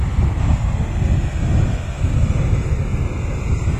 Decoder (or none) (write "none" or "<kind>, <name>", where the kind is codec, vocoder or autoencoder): none